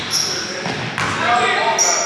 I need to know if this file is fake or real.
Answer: real